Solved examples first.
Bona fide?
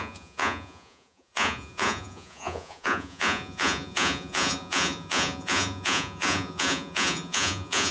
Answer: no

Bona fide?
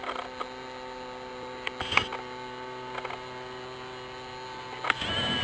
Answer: yes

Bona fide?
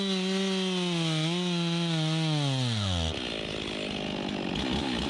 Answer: yes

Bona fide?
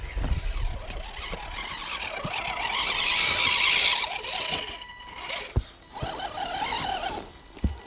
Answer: yes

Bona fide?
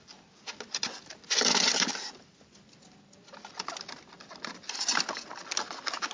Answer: yes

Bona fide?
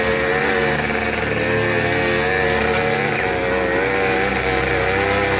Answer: yes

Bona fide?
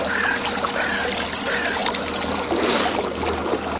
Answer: yes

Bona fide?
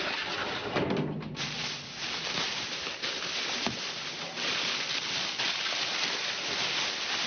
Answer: yes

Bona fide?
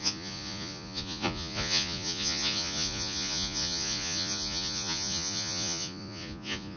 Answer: no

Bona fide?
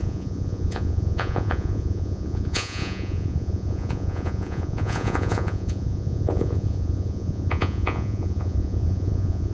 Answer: no